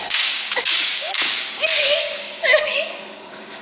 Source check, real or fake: fake